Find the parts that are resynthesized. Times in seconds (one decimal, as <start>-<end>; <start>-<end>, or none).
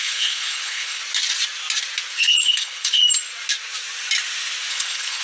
0.0-1.0; 2.1-3.0; 4.7-5.2